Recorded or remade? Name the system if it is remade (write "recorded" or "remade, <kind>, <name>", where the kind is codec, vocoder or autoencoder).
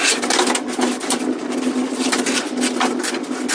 recorded